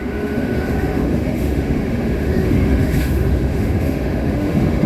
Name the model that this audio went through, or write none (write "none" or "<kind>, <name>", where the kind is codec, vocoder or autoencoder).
autoencoder, DAC-VAE